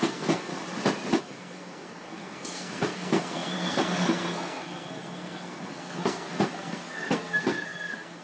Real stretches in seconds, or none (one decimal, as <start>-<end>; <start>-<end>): 0.5-1.2